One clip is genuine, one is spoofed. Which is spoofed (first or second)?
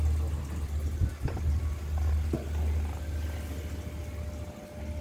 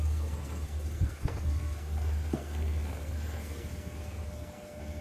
second